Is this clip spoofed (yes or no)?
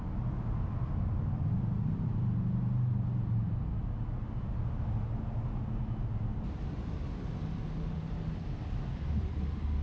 no